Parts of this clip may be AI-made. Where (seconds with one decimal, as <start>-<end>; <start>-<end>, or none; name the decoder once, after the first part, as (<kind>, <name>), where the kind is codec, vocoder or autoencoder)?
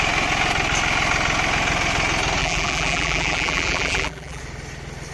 2.4-4.4 (vocoder, BigVGAN v2)